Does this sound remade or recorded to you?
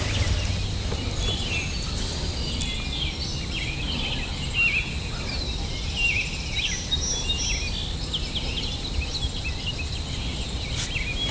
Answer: recorded